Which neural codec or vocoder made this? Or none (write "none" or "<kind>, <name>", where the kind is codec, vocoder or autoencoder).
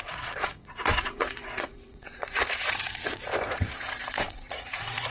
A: vocoder, Vocos